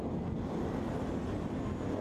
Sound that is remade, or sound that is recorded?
recorded